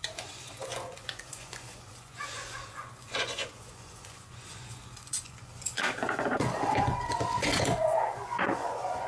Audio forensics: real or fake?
fake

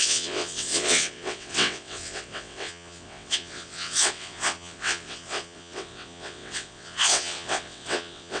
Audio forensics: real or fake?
fake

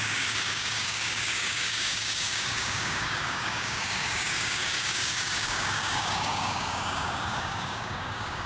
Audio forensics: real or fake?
fake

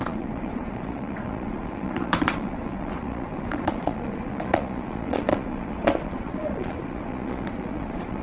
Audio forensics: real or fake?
fake